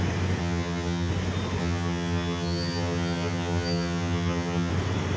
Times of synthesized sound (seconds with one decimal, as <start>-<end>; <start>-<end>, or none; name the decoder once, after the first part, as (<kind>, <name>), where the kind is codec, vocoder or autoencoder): 0.4-1.1 (vocoder, HiFi-GAN); 1.6-4.7